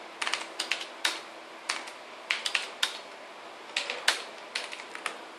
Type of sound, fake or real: real